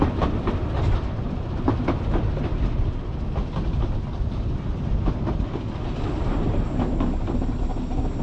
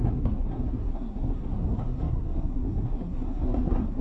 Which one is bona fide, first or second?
first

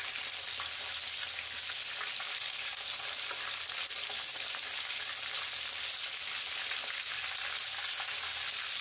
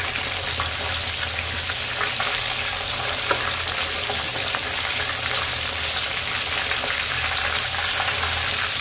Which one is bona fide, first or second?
first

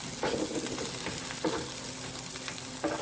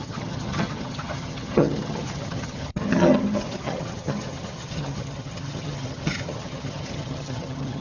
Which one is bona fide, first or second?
first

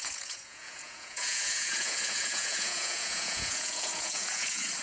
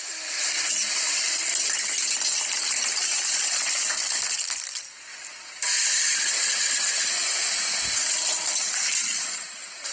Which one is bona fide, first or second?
second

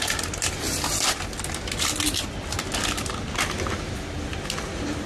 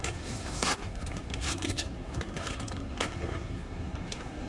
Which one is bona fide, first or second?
first